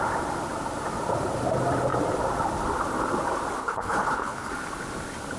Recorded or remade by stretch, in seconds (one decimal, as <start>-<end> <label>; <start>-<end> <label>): 0.0-3.6 recorded; 3.6-4.5 remade; 4.5-5.4 recorded